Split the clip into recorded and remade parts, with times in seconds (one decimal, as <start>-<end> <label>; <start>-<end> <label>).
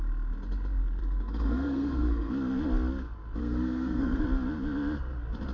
0.0-1.0 recorded; 1.0-2.3 remade; 2.3-3.4 recorded; 3.4-4.2 remade; 4.2-5.5 recorded